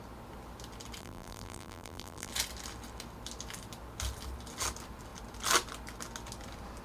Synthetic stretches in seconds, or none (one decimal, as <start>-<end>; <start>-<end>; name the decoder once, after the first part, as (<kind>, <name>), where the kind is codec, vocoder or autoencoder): 1.0-2.3 (vocoder, BigVGAN v2)